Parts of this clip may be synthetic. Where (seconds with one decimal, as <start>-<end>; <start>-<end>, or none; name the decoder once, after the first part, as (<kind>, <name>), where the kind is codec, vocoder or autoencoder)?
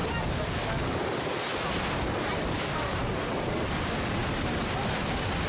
none